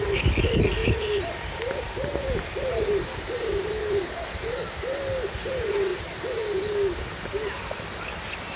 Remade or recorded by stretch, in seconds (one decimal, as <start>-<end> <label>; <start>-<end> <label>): 0.0-0.8 recorded; 0.8-4.6 remade; 4.6-5.9 recorded; 5.9-6.7 remade; 6.7-8.6 recorded